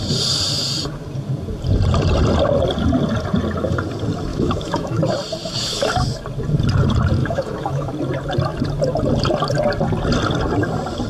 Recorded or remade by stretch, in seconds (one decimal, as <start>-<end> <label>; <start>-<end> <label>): 0.0-4.3 recorded; 4.3-5.0 remade; 5.0-5.4 recorded; 5.4-5.9 remade; 5.9-7.2 recorded; 7.2-7.9 remade; 7.9-11.1 recorded